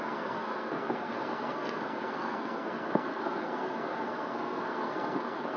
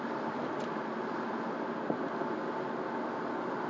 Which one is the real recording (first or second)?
second